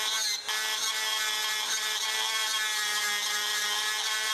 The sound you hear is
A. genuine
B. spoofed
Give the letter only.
A